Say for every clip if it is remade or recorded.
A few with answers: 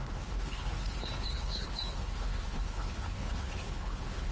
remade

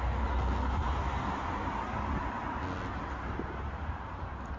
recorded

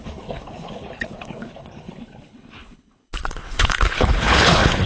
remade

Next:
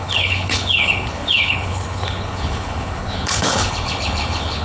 remade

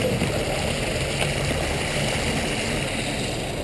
recorded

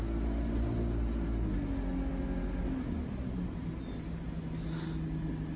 recorded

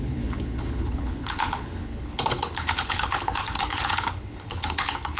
remade